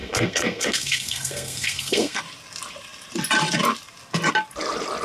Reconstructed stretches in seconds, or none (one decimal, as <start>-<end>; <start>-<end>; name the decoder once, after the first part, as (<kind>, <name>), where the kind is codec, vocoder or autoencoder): 0.0-2.2 (codec, SNAC)